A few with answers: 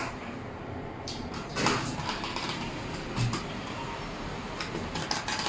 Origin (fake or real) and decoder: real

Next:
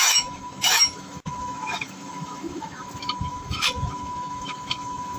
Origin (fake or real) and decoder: fake, autoencoder, DAC-VAE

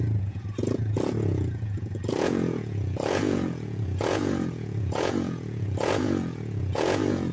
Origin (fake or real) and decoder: fake, vocoder, Vocos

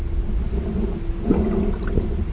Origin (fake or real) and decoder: real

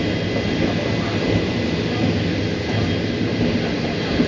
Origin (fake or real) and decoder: real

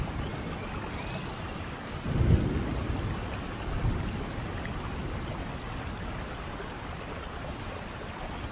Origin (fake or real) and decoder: real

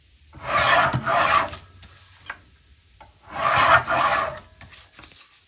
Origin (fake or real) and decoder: real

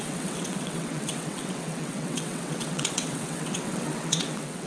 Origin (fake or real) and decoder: fake, vocoder, WaveNeXt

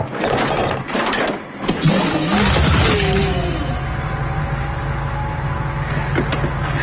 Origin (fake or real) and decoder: real